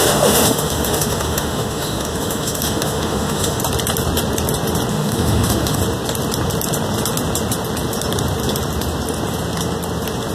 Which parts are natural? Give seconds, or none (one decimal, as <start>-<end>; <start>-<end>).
3.6-4.9; 5.8-10.3